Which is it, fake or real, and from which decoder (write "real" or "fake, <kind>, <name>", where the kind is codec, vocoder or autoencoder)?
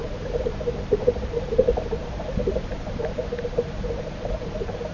fake, vocoder, BigVGAN v2